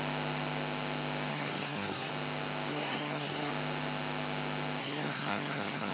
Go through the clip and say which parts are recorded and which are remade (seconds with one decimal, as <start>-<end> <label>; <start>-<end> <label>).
0.0-1.3 recorded; 1.3-2.1 remade; 2.1-2.7 recorded; 2.7-3.5 remade; 3.5-4.8 recorded; 4.8-5.9 remade